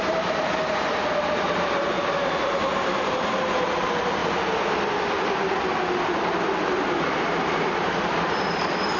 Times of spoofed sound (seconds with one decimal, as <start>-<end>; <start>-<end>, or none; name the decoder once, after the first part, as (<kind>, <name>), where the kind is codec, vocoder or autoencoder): 0.0-4.2 (vocoder, BigVGAN v2); 6.0-9.0